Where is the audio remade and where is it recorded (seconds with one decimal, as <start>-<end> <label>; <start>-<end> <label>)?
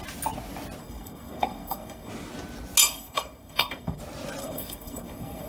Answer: 0.0-0.8 recorded; 0.8-2.1 remade; 2.1-2.8 recorded; 2.8-4.0 remade; 4.0-4.4 recorded; 4.4-5.5 remade